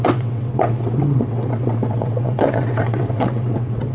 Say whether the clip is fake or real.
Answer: fake